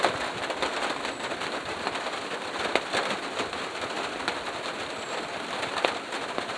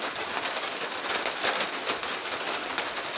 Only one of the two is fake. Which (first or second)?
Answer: first